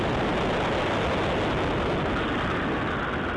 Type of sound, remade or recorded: recorded